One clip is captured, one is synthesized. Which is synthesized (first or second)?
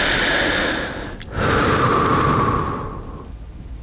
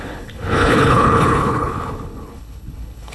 second